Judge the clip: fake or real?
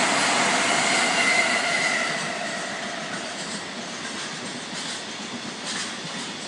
real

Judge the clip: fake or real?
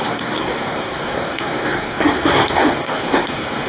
fake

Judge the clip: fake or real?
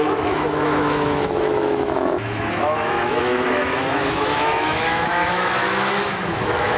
fake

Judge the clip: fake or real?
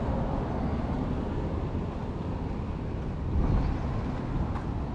real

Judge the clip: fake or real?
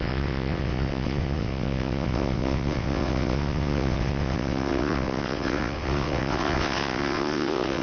fake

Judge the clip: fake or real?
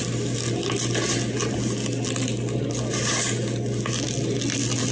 real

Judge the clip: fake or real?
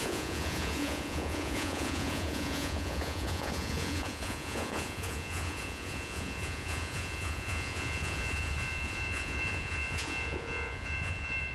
fake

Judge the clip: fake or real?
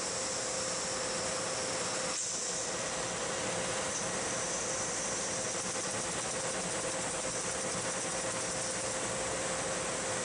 real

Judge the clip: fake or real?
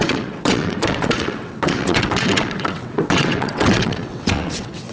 fake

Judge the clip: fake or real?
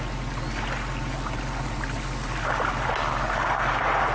real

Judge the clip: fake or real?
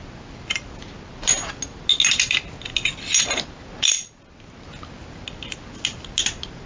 real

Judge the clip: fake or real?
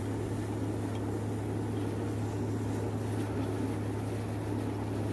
real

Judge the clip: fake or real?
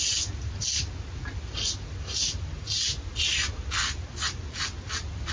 real